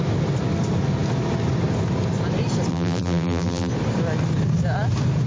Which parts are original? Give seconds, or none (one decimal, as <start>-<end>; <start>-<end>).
0.0-2.7; 3.7-5.3